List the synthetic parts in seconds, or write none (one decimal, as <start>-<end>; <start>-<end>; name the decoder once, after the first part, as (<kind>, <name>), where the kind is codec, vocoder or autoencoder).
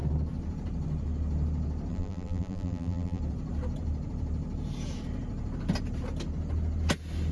1.9-3.2 (vocoder, BigVGAN v2)